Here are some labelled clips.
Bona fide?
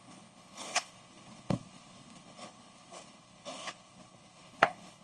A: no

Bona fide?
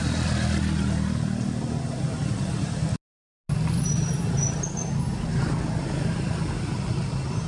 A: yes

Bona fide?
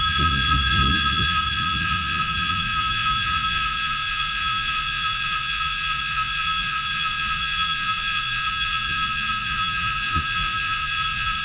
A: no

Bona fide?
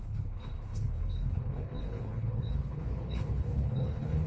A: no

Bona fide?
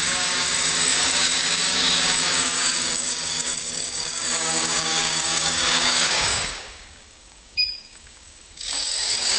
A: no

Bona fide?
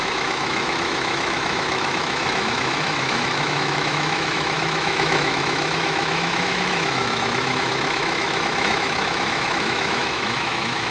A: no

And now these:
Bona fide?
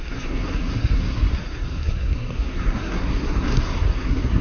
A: no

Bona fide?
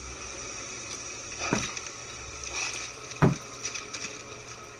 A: no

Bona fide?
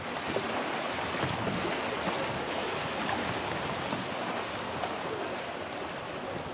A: yes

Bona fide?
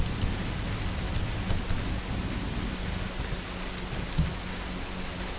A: yes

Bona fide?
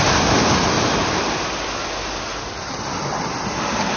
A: yes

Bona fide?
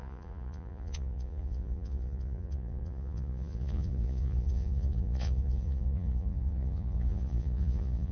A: no